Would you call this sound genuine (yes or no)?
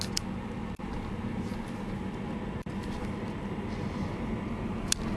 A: yes